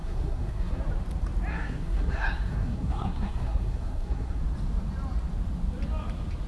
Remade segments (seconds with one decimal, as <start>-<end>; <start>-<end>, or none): 0.0-0.8; 1.5-4.4